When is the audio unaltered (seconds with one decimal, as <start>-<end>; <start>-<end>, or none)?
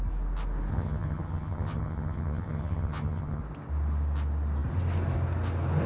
0.0-0.7; 3.4-5.9